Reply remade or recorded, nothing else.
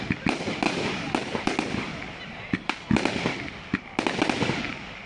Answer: recorded